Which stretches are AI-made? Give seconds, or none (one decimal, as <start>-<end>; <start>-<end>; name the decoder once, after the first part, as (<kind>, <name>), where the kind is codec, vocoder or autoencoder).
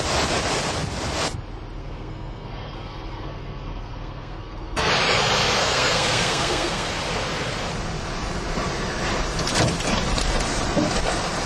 1.8-4.9 (codec, SNAC); 5.6-6.9